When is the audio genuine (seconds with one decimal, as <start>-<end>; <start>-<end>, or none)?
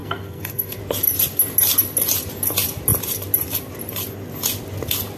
0.8-5.2